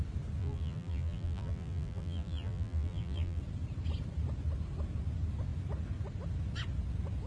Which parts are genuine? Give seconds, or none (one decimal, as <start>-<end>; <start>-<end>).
0.0-0.4; 3.4-7.3